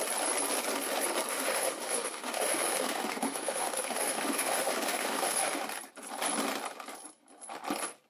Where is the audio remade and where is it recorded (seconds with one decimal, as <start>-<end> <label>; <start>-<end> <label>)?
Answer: 0.0-1.3 recorded; 1.3-5.6 remade; 5.6-8.1 recorded